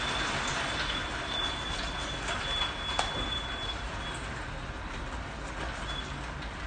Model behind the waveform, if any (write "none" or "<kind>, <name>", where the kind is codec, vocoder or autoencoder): none